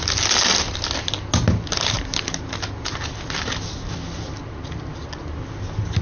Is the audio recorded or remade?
recorded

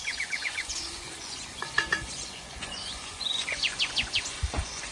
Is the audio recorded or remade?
remade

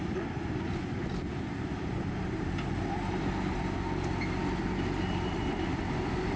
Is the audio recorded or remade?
recorded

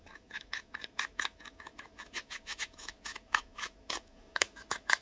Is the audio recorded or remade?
remade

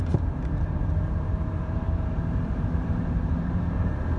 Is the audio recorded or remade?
remade